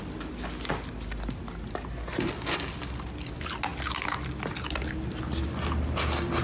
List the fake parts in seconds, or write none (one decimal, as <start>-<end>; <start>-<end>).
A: none